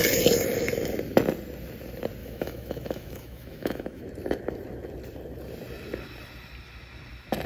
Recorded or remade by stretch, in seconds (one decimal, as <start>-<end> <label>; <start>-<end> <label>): 0.0-2.2 recorded; 2.2-4.0 remade; 4.0-7.5 recorded